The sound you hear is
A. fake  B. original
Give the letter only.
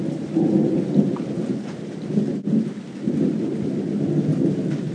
B